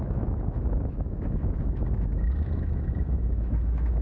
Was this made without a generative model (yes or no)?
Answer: no